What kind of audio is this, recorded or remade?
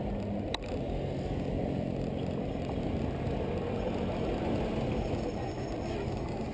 recorded